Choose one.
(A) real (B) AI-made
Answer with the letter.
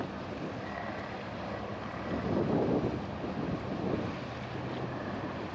A